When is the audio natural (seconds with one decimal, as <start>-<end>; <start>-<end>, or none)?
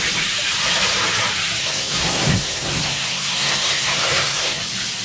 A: 0.0-1.6; 4.6-5.0